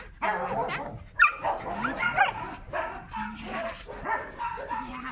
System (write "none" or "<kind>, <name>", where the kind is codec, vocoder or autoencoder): none